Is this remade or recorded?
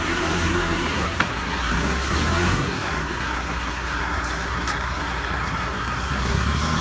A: remade